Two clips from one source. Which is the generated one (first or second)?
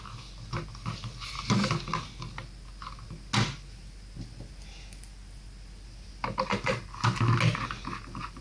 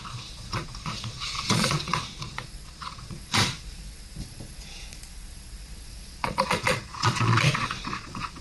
second